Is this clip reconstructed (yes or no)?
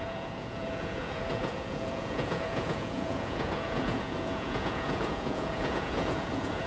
yes